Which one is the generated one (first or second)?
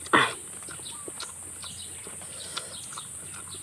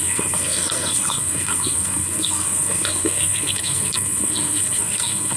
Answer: second